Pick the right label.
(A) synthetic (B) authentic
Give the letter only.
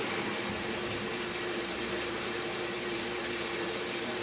A